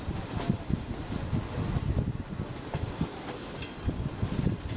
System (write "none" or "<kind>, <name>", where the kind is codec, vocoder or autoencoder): none